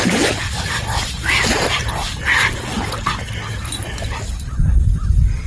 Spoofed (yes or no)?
no